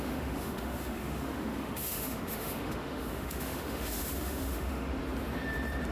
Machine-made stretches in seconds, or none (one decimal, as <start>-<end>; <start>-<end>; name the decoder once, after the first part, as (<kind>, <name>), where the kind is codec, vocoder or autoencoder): 0.0-5.0 (autoencoder, DAC-VAE)

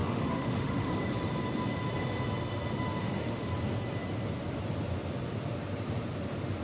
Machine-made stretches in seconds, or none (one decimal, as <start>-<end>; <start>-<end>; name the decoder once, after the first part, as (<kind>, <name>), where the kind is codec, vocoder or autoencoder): 0.0-0.9 (autoencoder, DAC-VAE); 3.0-3.5

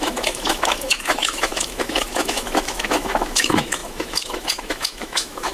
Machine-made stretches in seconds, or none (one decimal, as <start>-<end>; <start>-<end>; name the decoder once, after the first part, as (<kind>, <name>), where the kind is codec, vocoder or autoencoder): 0.0-5.5 (autoencoder, DAC-VAE)

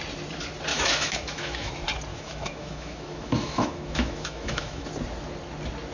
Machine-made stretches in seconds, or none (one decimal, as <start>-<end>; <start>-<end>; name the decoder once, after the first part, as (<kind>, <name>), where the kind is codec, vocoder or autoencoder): 0.7-1.7 (autoencoder, DAC-VAE); 2.1-4.9

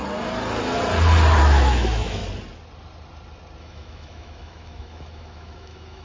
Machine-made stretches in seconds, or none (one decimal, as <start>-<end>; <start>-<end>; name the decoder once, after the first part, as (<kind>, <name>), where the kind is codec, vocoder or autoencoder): 1.4-2.2 (autoencoder, DAC-VAE); 3.6-6.0

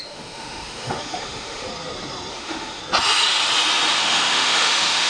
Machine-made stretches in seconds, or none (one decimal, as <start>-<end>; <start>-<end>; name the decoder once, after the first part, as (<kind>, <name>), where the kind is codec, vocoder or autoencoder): 0.0-1.7 (autoencoder, DAC-VAE); 2.3-2.8; 3.9-5.1

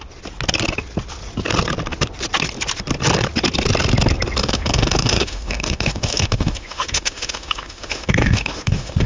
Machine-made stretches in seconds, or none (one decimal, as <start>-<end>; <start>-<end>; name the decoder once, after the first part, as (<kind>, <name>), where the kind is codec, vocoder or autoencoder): 4.4-9.1 (autoencoder, DAC-VAE)

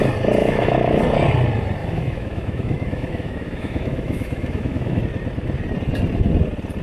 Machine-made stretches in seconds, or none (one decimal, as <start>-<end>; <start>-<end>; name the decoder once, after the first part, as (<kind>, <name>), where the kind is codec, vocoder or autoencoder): 0.4-1.0 (autoencoder, DAC-VAE); 1.8-5.0